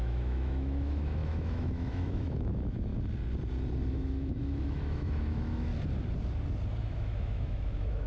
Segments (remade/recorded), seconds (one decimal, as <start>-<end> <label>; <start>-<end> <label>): 0.0-2.9 remade; 2.9-3.9 recorded; 3.9-5.7 remade; 5.7-6.9 recorded; 6.9-8.1 remade